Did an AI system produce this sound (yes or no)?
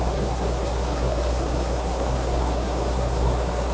yes